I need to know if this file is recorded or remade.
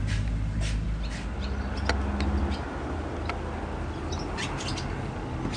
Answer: recorded